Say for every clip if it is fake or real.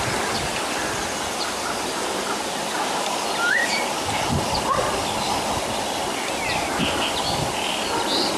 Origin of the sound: real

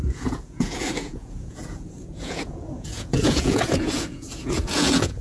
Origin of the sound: fake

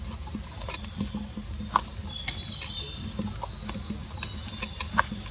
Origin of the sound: real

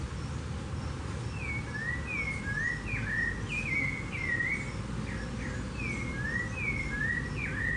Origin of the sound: real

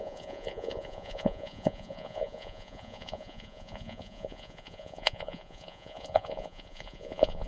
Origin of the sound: fake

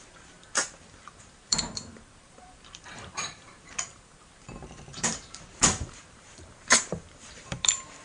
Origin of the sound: fake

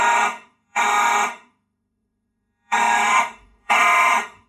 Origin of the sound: fake